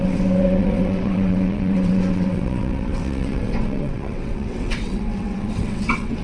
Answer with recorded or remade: remade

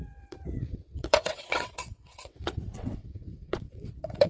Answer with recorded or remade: remade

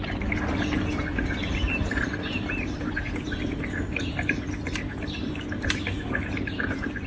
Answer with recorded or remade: recorded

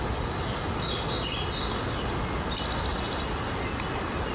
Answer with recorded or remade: recorded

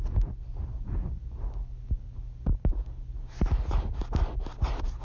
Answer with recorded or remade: recorded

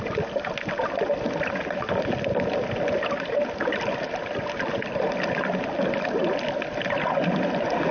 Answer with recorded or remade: recorded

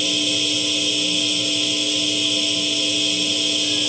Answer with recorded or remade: recorded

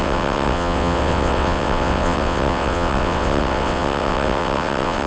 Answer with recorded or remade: remade